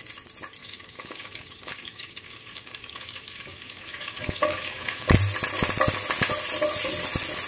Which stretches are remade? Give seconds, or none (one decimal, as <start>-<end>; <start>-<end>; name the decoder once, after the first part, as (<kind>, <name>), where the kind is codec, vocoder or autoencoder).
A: 0.6-5.1 (codec, DAC)